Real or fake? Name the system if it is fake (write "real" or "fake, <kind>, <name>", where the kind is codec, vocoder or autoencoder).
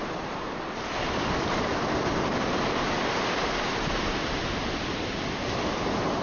real